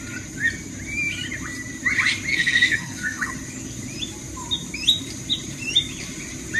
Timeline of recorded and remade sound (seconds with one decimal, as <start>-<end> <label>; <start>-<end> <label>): 0.0-2.3 recorded; 2.3-3.3 remade; 3.3-6.6 recorded